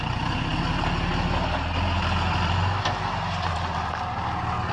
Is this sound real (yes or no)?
yes